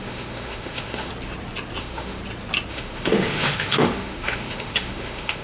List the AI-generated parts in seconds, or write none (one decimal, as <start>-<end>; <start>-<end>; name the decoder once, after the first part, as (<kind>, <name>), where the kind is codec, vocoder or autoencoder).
0.0-1.1 (autoencoder, DAC-VAE); 1.8-2.2; 2.7-5.4